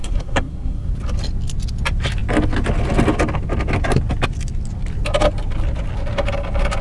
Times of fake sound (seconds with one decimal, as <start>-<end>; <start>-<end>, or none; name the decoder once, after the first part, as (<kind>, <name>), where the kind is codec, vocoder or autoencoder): 0.0-0.9 (codec, SNAC)

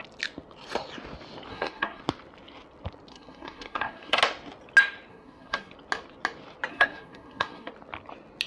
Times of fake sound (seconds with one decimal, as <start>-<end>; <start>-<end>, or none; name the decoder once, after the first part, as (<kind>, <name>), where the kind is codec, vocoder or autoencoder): 1.5-2.0 (codec, SNAC); 3.1-4.2; 5.1-5.7; 6.7-7.7

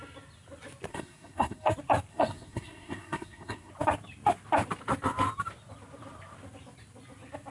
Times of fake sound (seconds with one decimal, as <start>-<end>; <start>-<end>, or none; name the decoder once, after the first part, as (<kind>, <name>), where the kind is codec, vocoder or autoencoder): 0.9-1.7 (codec, SNAC); 2.1-3.7

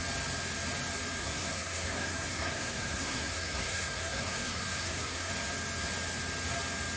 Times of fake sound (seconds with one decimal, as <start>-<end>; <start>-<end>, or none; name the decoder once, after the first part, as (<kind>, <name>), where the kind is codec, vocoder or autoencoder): 1.2-5.3 (codec, SNAC)

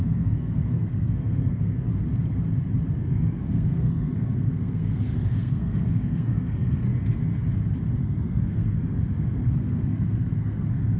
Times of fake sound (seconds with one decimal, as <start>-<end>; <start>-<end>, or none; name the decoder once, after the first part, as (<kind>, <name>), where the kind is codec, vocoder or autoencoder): 0.0-1.9 (codec, SNAC); 2.9-6.9; 8.0-11.0